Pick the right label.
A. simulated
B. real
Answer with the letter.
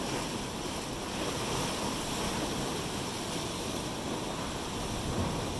B